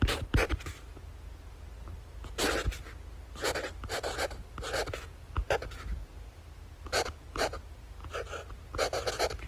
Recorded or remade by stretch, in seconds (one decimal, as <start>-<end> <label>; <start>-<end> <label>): 0.0-1.0 remade; 1.0-4.2 recorded; 4.2-9.5 remade